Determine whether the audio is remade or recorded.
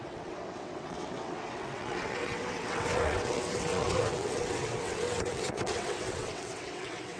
remade